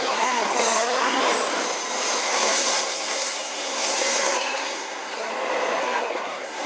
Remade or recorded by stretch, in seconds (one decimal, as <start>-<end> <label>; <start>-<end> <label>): 0.0-1.2 remade; 1.2-2.2 recorded; 2.2-5.3 remade; 5.3-5.8 recorded; 5.8-6.7 remade